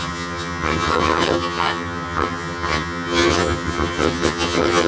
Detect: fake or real fake